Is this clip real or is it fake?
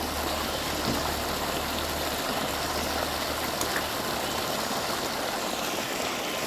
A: real